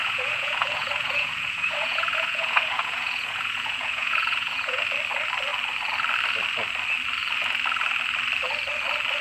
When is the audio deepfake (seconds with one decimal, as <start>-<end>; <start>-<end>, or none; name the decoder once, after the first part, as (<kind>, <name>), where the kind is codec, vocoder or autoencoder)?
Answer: 0.0-4.8 (vocoder, Vocos)